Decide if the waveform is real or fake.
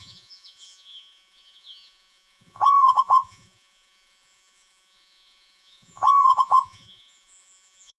fake